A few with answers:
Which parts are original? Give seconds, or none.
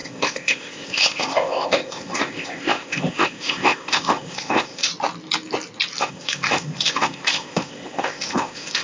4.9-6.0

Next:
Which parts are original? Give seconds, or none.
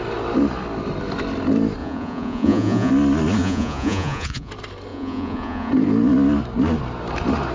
0.0-1.8; 2.9-3.4; 4.5-4.9; 5.7-7.5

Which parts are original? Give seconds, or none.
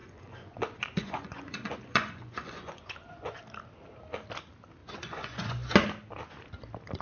3.4-4.8; 5.7-7.0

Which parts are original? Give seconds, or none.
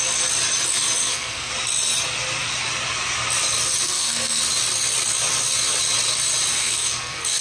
0.0-1.0; 1.5-3.8; 4.4-6.5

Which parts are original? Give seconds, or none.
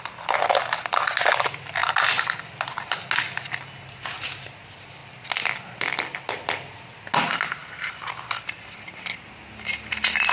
0.0-10.3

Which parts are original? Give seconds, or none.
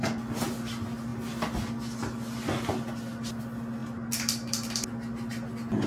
0.0-3.8; 4.9-5.9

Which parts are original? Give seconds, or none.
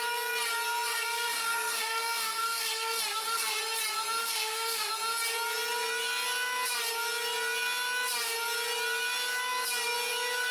0.0-0.9; 3.6-4.2; 4.9-10.5